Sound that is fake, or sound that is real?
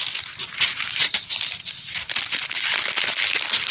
real